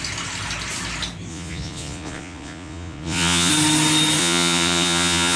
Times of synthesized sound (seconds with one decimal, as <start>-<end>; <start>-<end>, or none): 1.3-3.5; 4.2-5.4